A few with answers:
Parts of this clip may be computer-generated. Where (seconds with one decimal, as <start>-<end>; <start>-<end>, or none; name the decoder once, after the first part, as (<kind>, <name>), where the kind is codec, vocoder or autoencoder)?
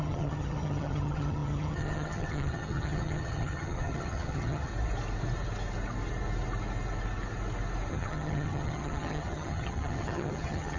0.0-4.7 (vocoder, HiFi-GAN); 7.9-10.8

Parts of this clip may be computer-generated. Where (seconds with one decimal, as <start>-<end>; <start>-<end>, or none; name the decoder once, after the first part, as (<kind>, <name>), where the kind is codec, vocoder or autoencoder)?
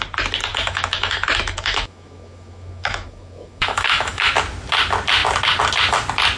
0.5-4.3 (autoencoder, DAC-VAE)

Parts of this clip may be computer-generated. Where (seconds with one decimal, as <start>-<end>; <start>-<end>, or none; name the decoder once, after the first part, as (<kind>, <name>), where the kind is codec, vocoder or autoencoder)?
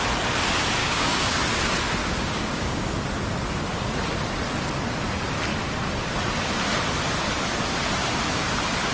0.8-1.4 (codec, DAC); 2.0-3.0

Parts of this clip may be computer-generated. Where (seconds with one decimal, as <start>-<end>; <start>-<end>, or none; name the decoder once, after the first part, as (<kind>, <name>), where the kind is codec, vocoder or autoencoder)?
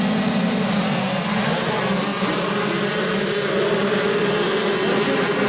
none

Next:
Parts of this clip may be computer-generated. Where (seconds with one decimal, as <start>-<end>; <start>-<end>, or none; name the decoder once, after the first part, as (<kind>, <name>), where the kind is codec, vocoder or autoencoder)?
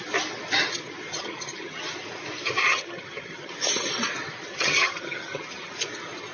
1.1-1.8 (vocoder, HiFi-GAN); 2.6-3.5; 4.5-5.7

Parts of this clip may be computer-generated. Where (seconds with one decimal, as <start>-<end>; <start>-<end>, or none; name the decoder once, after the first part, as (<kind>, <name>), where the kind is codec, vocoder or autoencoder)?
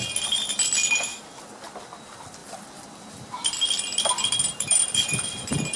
1.1-2.0 (vocoder, BigVGAN v2); 2.4-5.8